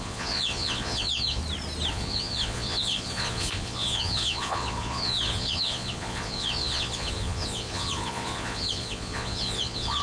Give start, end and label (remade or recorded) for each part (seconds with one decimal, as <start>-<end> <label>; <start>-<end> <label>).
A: 0.0-1.4 remade; 1.4-1.9 recorded; 1.9-10.0 remade